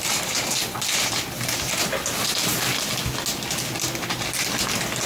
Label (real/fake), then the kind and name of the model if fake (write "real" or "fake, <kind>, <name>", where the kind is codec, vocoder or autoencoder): real